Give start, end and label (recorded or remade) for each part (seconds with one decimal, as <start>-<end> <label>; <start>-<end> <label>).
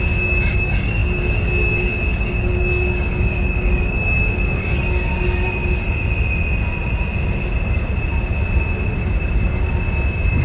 0.0-5.6 remade; 5.6-10.4 recorded